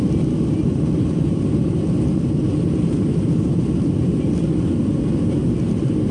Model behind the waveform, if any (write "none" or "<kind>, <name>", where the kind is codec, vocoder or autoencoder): none